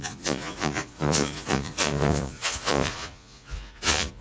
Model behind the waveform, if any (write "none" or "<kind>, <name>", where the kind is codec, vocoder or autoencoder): vocoder, Vocos